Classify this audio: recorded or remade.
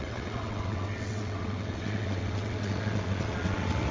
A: remade